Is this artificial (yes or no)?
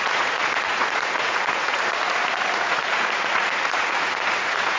yes